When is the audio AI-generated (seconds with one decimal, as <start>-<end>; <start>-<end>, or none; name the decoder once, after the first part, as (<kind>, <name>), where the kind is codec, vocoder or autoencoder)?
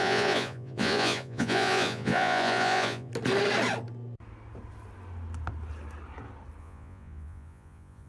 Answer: 0.0-3.1 (vocoder, Vocos); 6.6-8.1